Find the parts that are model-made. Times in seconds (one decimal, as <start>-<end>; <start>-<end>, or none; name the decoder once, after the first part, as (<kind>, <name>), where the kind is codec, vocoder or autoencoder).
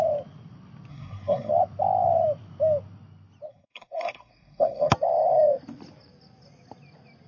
0.9-1.5 (codec, SNAC); 3.5-4.9